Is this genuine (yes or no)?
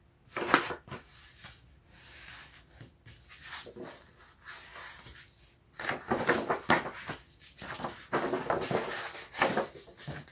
yes